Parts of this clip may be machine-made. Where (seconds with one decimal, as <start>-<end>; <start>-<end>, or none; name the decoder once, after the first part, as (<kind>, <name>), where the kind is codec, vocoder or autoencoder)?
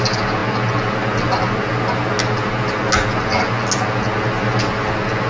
none